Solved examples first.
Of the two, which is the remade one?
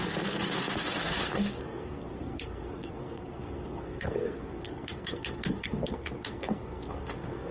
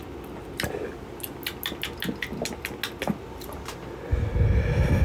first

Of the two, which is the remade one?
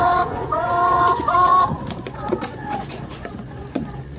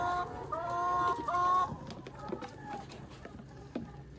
first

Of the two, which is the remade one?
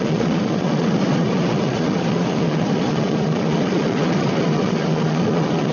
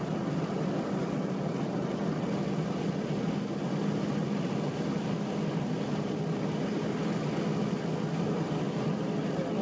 first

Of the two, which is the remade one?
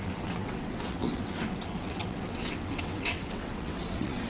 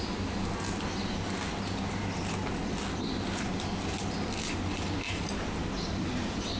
first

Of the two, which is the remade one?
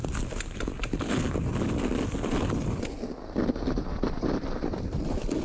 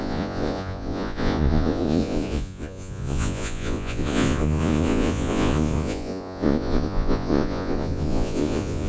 second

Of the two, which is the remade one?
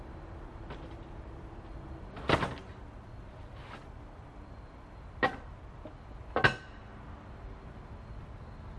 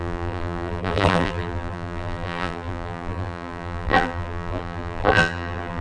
second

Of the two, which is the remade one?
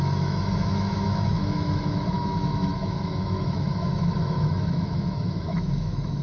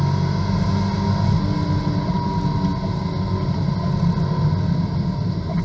first